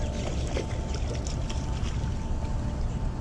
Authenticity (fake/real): real